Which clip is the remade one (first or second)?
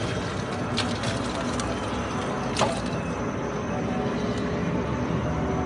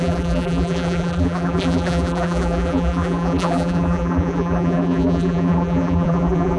second